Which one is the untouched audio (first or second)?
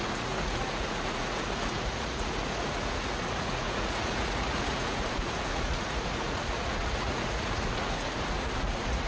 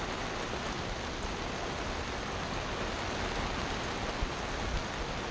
second